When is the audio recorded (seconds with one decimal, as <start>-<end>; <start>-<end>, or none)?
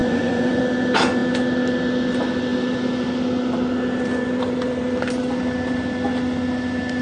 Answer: 0.6-7.0